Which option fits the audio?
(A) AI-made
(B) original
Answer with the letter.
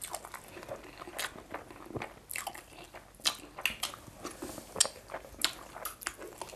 B